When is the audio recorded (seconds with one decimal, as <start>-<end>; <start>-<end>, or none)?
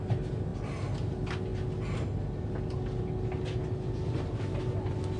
0.0-5.2